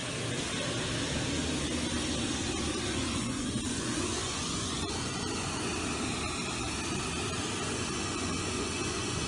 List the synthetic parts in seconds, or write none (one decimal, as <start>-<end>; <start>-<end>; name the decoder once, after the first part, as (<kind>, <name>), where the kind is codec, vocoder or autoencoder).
2.8-5.7 (vocoder, Vocos); 7.6-9.3